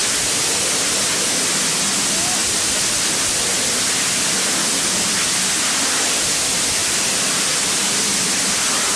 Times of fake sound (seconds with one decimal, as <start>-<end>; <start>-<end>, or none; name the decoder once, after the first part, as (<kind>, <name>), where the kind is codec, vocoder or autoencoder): 2.4-3.4 (vocoder, BigVGAN v2); 6.8-7.9